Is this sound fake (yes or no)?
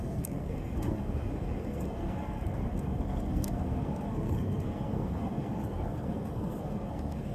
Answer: yes